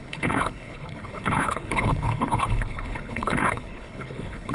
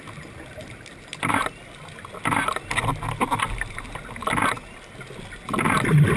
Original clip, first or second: second